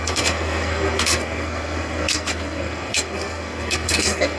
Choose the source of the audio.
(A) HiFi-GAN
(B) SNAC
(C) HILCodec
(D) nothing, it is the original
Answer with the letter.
B